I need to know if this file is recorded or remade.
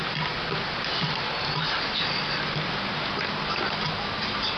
recorded